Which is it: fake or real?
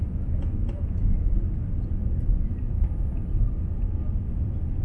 real